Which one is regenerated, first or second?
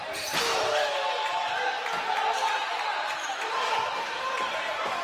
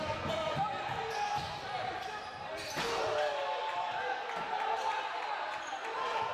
first